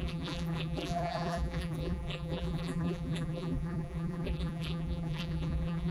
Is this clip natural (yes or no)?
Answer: no